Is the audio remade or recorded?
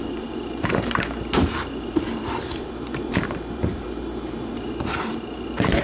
remade